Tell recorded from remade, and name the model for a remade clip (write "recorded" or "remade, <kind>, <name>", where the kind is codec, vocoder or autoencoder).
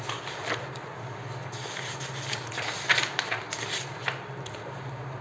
recorded